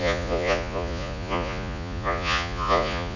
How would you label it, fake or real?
fake